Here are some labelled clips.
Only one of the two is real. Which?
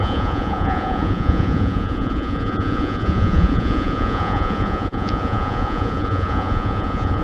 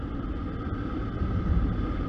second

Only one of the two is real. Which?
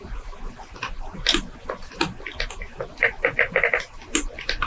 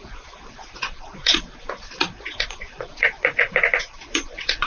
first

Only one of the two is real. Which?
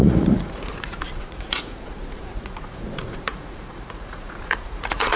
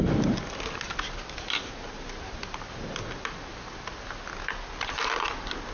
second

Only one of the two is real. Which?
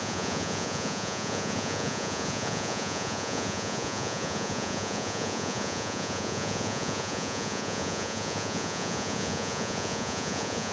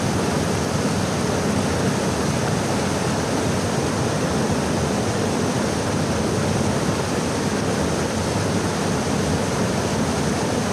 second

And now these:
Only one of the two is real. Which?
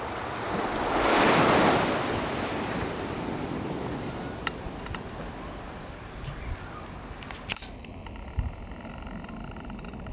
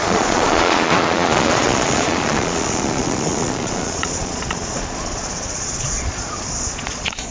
first